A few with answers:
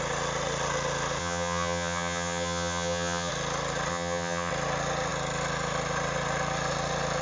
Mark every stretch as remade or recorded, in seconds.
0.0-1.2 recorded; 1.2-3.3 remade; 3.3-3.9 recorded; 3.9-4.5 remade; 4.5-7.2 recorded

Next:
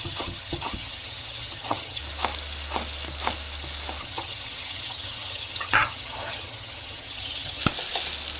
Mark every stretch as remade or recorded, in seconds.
0.0-2.0 remade; 2.0-4.0 recorded; 4.0-7.6 remade; 7.6-8.4 recorded